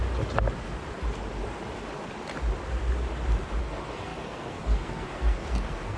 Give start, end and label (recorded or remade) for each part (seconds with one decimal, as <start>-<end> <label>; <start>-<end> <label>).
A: 0.0-3.6 recorded; 3.6-6.0 remade